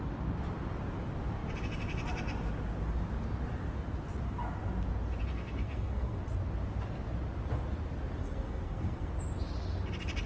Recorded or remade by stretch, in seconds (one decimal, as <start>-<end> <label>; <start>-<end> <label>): 0.0-5.3 recorded; 5.3-6.2 remade; 6.2-8.2 recorded; 8.2-9.1 remade; 9.1-10.3 recorded